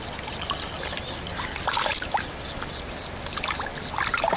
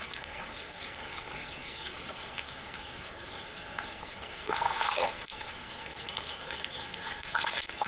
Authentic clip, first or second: first